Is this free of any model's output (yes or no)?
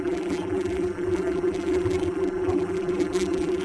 no